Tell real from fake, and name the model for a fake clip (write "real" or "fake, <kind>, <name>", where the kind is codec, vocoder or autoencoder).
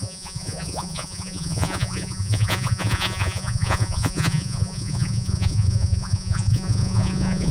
fake, vocoder, Vocos